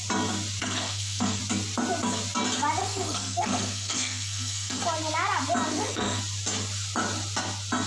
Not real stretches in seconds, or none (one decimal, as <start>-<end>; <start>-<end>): 0.6-1.4; 2.8-4.8; 5.7-6.2